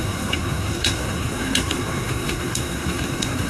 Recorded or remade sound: remade